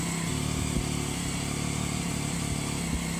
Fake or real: real